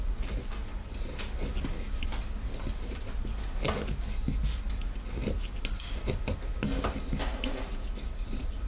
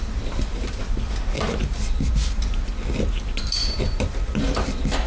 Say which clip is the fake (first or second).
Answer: second